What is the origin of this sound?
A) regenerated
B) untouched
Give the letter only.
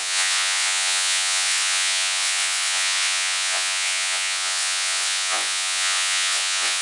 A